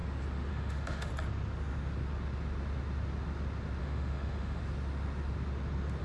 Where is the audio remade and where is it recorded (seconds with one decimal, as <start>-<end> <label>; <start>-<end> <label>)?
0.0-0.5 recorded; 0.5-1.1 remade; 1.1-3.8 recorded; 3.8-4.6 remade; 4.6-6.0 recorded